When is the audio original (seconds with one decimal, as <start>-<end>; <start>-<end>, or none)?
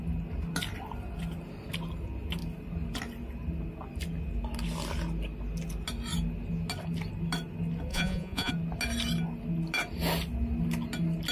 0.0-7.9; 8.5-11.3